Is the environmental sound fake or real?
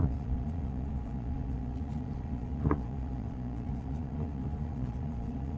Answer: fake